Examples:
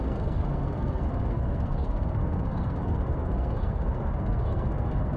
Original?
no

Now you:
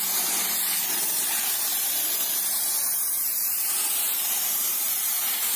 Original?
no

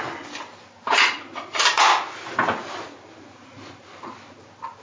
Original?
yes